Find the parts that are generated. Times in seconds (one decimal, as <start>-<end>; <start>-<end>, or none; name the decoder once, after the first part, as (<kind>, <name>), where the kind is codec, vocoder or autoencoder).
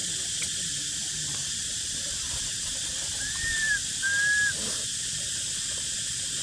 0.0-0.8 (vocoder, BigVGAN v2)